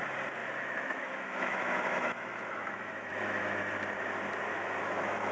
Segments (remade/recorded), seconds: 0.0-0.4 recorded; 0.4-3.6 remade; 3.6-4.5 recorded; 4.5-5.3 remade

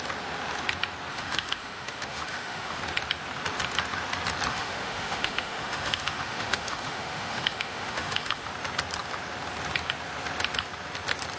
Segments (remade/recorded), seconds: 0.0-1.1 recorded; 1.1-2.8 remade; 2.8-4.5 recorded; 4.5-8.5 remade; 8.5-11.4 recorded

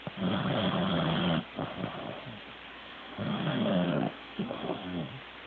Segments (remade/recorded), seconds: 0.0-2.7 recorded; 2.7-5.1 remade; 5.1-5.5 recorded

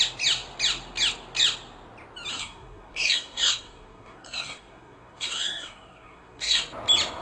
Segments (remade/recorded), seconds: 0.0-2.3 recorded; 2.3-6.6 remade; 6.6-7.2 recorded

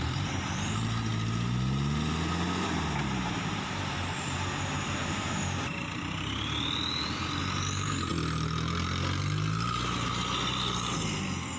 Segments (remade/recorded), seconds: 0.0-1.1 remade; 1.1-3.0 recorded; 3.0-8.1 remade; 8.1-11.6 recorded